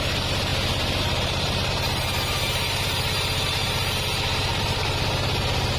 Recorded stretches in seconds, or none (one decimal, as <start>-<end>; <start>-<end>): 0.5-1.0